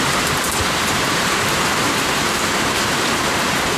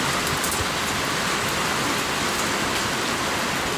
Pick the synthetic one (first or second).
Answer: first